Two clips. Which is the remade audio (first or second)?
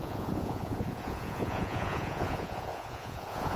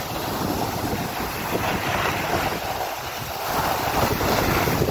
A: first